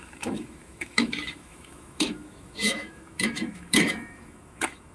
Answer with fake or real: fake